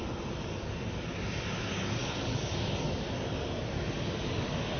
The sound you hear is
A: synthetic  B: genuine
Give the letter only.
B